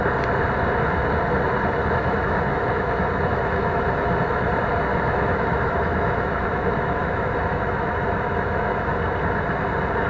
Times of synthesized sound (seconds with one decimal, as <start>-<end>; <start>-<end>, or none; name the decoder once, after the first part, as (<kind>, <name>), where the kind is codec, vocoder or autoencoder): 1.8-4.5 (autoencoder, DAC-VAE); 4.9-9.0